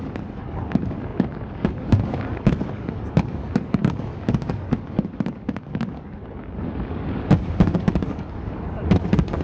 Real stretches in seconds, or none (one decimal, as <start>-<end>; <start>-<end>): none